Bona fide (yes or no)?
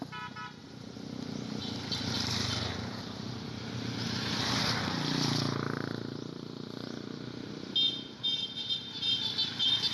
yes